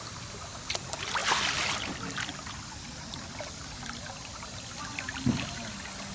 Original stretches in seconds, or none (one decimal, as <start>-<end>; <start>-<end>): 0.0-6.1